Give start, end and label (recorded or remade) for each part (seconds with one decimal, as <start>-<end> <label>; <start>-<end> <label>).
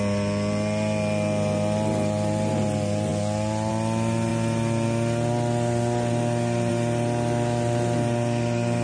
0.0-8.8 recorded